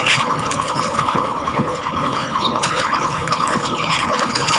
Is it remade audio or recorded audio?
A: remade